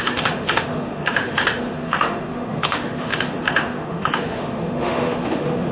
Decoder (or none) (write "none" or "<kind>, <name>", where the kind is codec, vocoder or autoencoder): autoencoder, DAC-VAE